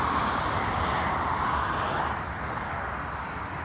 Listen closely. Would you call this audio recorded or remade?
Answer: recorded